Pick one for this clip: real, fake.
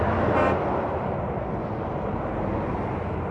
real